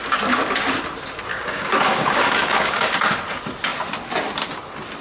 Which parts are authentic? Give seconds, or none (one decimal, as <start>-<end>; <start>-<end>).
0.0-1.3; 3.0-5.0